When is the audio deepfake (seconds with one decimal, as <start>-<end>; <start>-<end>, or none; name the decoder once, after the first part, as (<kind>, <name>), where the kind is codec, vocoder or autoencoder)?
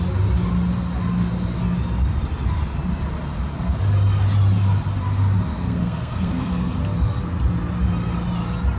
5.5-6.7 (codec, SNAC)